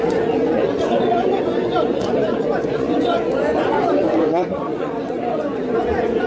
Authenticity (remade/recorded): remade